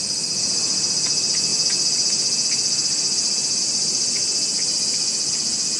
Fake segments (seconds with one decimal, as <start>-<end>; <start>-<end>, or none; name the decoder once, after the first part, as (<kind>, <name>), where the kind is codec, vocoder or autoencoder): none